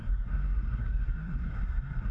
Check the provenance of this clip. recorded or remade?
remade